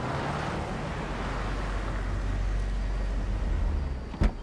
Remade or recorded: recorded